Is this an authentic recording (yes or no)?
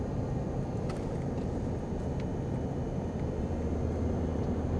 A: no